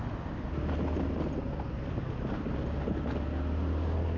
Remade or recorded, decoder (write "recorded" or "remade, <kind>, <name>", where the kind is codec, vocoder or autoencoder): recorded